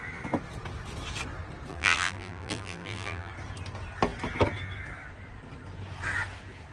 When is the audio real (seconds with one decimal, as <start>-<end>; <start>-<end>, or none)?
0.0-1.7; 3.3-6.7

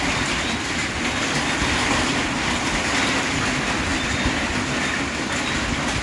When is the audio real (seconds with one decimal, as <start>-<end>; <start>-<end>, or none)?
0.0-6.0

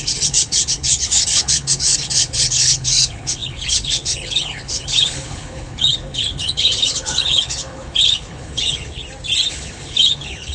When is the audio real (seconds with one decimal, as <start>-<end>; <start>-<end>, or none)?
9.0-9.5

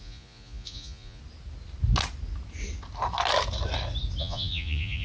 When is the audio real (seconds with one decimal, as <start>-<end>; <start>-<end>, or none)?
1.2-4.2

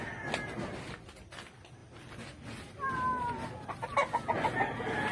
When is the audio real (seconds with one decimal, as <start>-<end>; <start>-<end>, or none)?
0.0-5.1

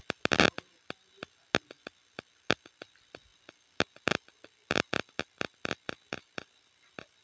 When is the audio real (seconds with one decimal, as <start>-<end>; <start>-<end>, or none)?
0.0-7.2

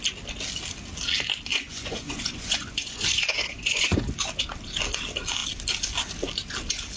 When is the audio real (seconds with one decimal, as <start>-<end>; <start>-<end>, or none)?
0.0-1.5; 4.1-7.0